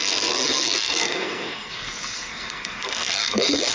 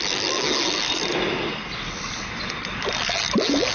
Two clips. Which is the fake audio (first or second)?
first